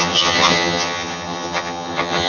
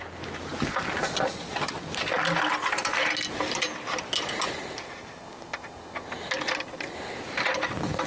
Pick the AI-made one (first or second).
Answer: first